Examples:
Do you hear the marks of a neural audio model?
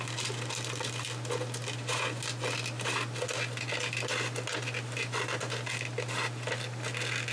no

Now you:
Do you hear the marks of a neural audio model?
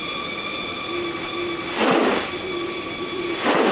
no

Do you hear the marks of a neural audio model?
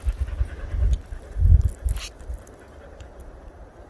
no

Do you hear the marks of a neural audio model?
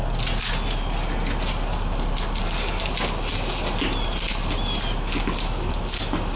no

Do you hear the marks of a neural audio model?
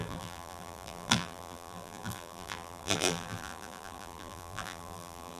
yes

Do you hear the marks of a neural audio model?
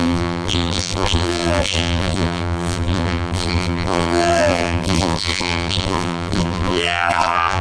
yes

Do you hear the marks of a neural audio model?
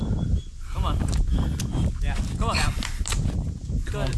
no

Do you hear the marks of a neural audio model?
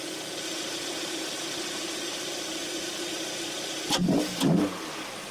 no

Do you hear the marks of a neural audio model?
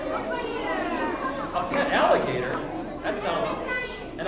no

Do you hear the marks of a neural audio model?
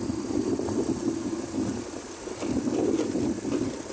no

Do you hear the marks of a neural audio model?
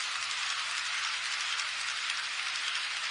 no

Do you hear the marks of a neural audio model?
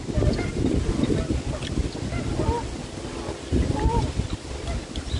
no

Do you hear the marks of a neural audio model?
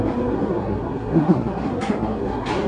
yes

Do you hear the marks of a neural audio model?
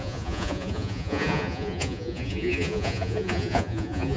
yes